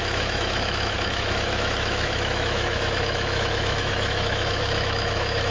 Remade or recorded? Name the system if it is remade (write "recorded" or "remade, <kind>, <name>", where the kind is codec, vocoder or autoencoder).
remade, autoencoder, DAC-VAE